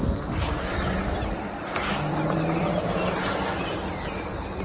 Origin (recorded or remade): recorded